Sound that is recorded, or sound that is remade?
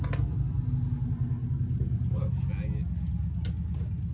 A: recorded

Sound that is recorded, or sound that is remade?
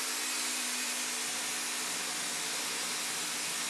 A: recorded